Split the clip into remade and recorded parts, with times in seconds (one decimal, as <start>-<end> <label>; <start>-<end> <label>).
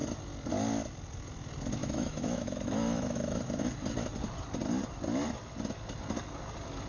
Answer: 0.0-1.8 recorded; 1.8-3.7 remade; 3.7-6.9 recorded